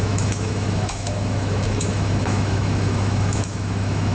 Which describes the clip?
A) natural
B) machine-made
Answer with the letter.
B